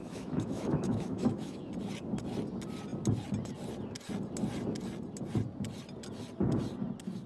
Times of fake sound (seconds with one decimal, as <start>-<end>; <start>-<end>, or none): 0.0-1.7